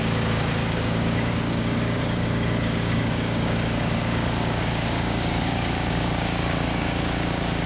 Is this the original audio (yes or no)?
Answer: no